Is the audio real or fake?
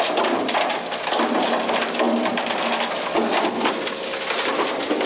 real